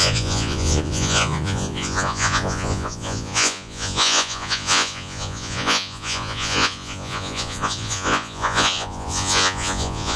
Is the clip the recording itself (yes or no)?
no